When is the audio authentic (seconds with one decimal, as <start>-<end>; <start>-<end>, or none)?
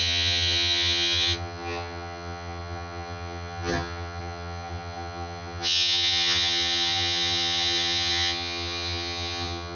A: none